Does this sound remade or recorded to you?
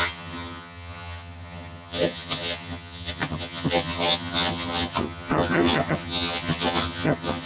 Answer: remade